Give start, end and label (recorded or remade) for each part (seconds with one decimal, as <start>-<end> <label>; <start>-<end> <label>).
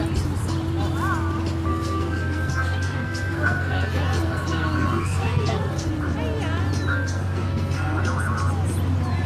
0.0-1.7 recorded; 1.7-5.9 remade; 5.9-6.9 recorded; 6.9-8.0 remade; 8.0-9.3 recorded